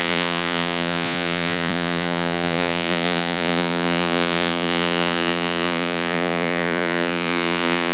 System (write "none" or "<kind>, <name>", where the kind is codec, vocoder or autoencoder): vocoder, Vocos